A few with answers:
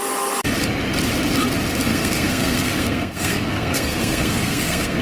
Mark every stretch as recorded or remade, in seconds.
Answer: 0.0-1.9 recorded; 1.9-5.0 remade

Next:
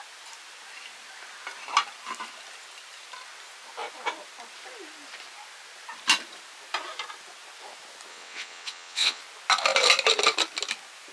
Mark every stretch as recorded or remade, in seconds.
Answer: 0.0-8.1 recorded; 8.1-9.2 remade; 9.2-11.1 recorded

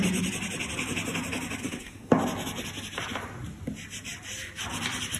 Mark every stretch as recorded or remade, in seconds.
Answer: 0.0-1.6 recorded; 1.6-2.1 remade; 2.1-5.2 recorded

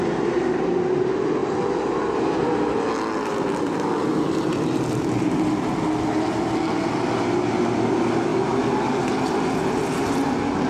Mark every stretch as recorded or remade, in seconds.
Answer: 0.0-10.7 recorded